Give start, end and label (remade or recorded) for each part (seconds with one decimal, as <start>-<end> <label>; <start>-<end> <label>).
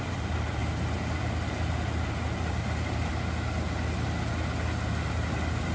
0.0-0.6 remade; 0.6-1.2 recorded; 1.2-3.1 remade; 3.1-5.0 recorded; 5.0-5.7 remade